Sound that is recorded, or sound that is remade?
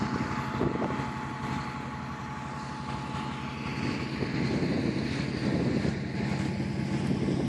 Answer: recorded